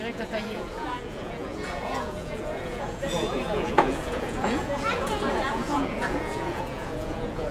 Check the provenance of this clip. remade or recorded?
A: remade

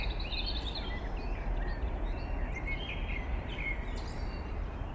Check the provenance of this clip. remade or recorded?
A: recorded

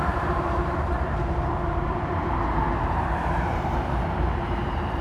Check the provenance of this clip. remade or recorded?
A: remade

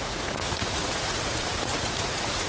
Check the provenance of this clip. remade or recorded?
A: remade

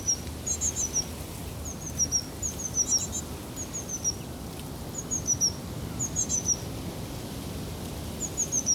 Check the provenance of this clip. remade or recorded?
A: recorded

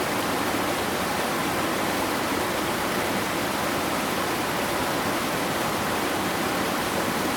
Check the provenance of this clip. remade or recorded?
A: recorded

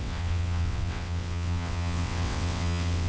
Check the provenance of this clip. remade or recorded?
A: remade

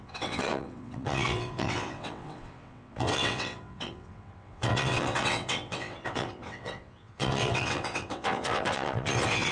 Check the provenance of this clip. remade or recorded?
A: remade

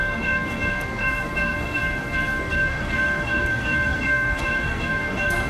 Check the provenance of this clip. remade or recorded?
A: remade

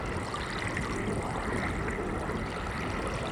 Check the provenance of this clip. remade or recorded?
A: recorded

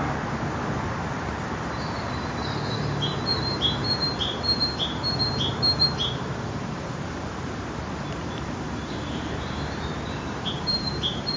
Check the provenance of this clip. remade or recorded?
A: remade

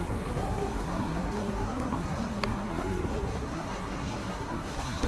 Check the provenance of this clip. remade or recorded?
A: remade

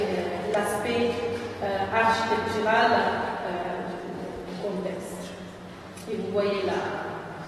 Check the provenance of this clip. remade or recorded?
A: recorded